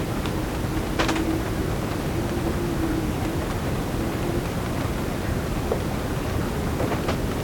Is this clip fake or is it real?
real